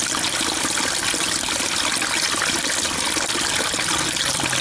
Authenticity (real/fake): real